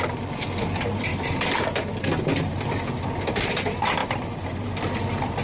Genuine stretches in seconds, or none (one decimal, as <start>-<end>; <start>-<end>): 0.0-5.4